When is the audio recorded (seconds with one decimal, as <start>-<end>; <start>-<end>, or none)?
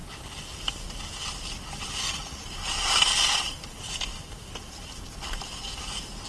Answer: 0.0-6.3